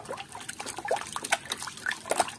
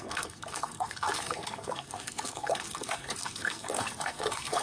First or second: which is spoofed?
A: second